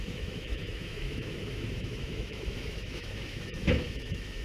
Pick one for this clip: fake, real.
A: fake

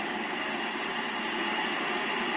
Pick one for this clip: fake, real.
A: real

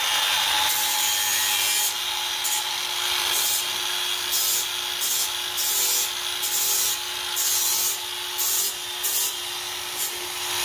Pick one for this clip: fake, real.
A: real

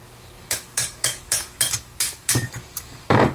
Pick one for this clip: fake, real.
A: fake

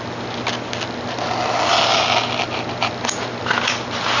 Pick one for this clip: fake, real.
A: real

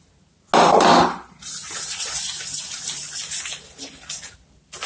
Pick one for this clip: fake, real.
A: real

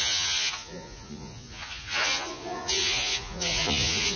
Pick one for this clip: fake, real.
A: fake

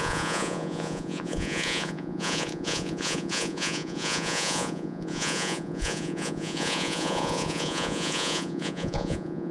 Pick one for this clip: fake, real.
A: fake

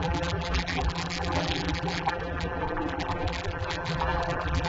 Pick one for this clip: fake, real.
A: fake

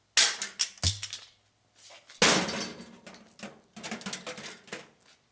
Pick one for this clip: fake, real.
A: real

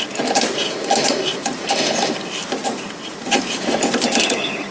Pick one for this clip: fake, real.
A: real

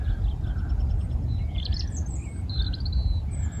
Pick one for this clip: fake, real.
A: real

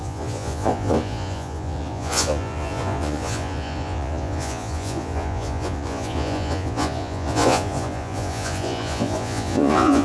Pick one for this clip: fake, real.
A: fake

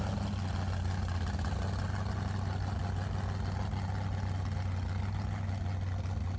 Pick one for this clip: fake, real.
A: real